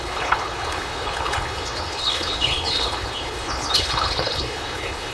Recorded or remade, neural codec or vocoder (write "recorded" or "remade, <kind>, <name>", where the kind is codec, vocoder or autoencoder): remade, codec, HILCodec